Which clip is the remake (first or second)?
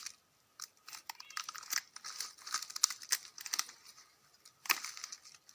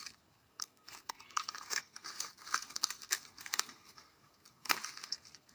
second